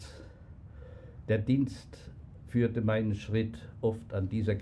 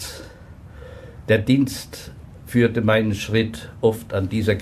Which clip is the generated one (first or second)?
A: second